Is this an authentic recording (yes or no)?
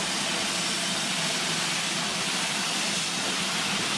yes